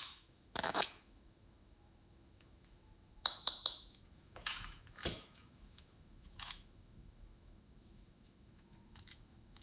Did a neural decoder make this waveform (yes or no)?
yes